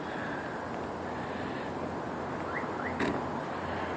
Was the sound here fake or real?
real